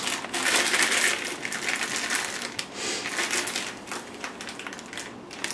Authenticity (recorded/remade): recorded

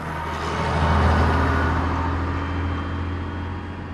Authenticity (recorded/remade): recorded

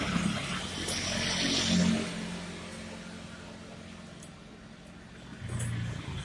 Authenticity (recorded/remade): recorded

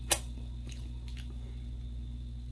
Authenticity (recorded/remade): recorded